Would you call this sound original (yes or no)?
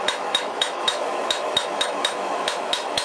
no